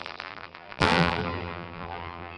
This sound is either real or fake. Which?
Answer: fake